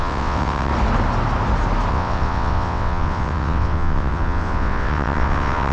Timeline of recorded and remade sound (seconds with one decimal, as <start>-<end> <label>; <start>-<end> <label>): 0.0-0.7 remade; 0.7-1.9 recorded; 1.9-5.7 remade